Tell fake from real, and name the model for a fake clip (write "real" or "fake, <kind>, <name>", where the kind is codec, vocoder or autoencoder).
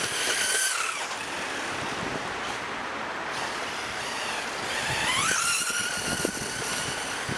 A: real